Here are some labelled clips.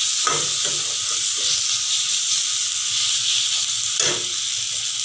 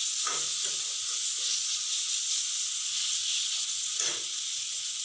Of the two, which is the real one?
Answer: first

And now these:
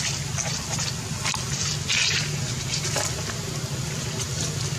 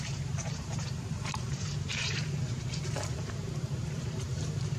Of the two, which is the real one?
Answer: first